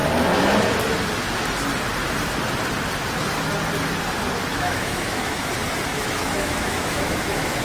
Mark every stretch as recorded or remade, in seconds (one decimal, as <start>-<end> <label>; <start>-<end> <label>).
0.0-4.5 recorded; 4.5-5.5 remade; 5.5-5.9 recorded; 5.9-7.6 remade

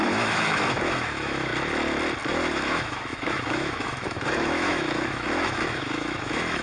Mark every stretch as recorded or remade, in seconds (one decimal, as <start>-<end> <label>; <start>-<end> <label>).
0.0-1.5 remade; 1.5-2.3 recorded; 2.3-6.6 remade

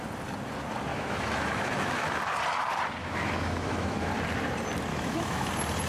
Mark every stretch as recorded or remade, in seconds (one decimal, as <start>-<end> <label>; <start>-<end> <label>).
0.0-0.9 recorded; 0.9-2.2 remade; 2.2-3.0 recorded; 3.0-4.1 remade; 4.1-4.9 recorded; 4.9-5.5 remade; 5.5-5.9 recorded

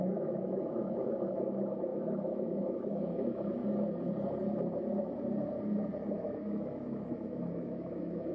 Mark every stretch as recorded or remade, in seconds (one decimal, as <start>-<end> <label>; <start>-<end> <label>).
0.0-3.6 remade; 3.6-6.1 recorded; 6.1-8.3 remade